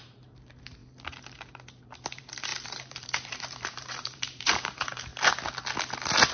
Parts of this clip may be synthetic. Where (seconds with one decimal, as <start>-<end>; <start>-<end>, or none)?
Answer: 0.0-0.8; 1.8-5.1